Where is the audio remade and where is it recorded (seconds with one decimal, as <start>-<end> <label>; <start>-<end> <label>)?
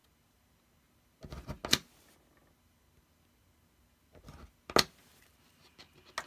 0.0-6.3 recorded